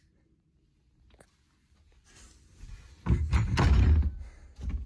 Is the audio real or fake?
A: real